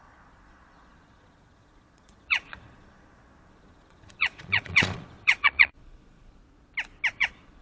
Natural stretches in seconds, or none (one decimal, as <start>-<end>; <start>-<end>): 6.4-7.1